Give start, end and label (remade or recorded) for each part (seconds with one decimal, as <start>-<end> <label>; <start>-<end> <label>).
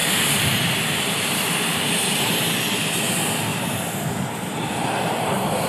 0.0-3.0 remade; 3.0-3.5 recorded; 3.5-5.7 remade